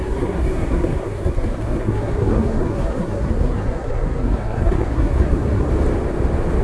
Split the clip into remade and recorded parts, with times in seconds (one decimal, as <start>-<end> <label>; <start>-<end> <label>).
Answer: 0.0-5.7 remade; 5.7-6.6 recorded